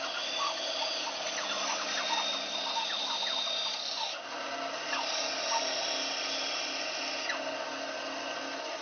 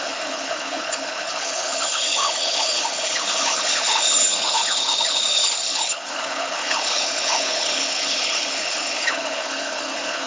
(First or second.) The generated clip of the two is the second